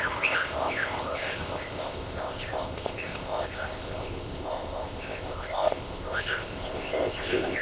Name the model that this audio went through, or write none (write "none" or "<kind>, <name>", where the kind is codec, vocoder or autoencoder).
codec, ZipCodec